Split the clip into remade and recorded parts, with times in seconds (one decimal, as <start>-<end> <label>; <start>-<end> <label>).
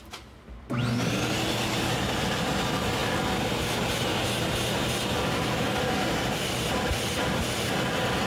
0.0-8.3 recorded